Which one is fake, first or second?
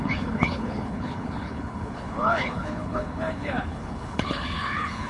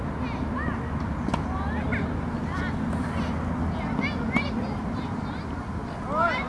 first